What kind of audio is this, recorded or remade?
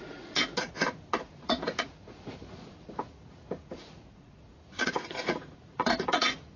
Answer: remade